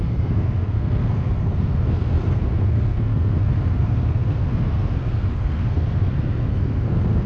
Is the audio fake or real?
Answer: fake